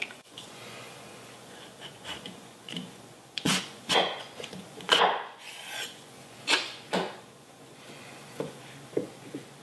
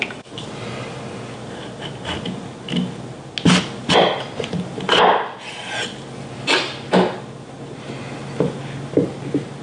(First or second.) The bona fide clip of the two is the second